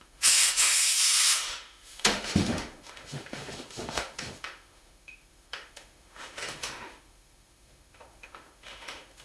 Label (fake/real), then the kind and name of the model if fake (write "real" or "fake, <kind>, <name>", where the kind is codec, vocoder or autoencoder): fake, autoencoder, DAC-VAE